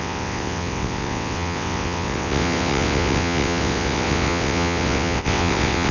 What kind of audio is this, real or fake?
fake